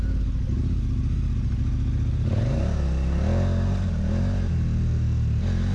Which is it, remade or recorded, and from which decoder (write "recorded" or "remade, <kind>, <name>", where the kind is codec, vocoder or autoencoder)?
recorded